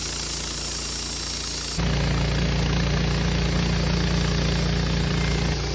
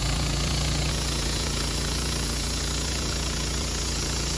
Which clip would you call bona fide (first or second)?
first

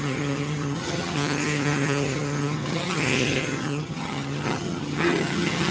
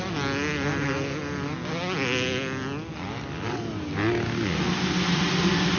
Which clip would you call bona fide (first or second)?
second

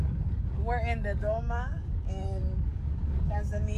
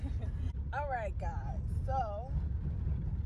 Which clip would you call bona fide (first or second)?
second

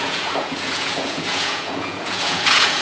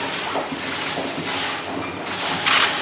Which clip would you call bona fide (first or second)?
second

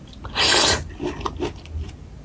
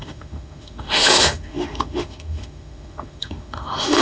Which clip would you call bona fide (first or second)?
first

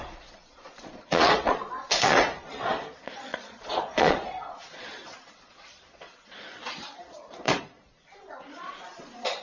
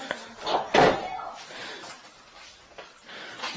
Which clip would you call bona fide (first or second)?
second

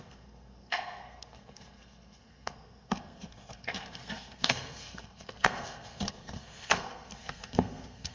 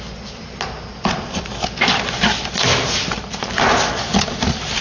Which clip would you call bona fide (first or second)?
second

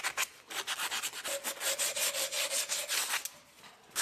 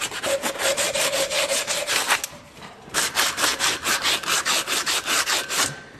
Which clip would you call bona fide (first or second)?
first